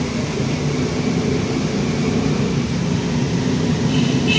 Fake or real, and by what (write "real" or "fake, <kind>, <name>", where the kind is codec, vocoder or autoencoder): real